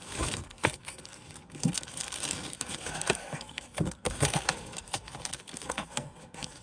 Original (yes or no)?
no